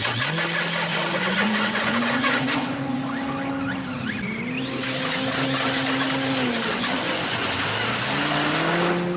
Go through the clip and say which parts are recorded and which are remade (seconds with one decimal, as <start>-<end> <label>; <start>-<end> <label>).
0.0-0.9 recorded; 0.9-3.0 remade; 3.0-6.7 recorded; 6.7-7.5 remade; 7.5-9.2 recorded